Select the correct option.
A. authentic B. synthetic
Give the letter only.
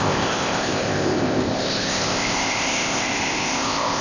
B